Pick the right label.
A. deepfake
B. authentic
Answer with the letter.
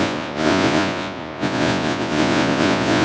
A